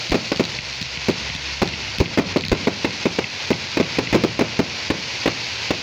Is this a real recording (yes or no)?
no